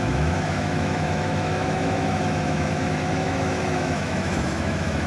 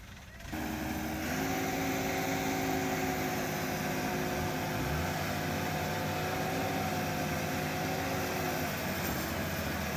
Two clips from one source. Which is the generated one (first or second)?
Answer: first